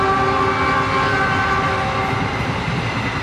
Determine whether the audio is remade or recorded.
recorded